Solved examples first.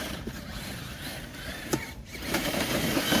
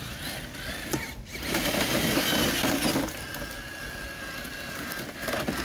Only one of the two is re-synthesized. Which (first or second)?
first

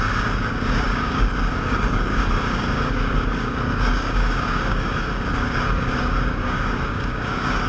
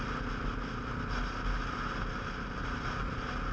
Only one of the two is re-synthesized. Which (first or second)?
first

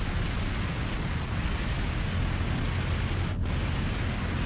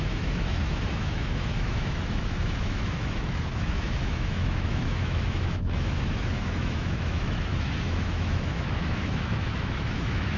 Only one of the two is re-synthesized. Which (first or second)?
second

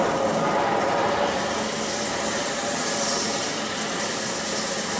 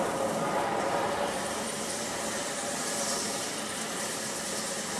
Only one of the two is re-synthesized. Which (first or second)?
second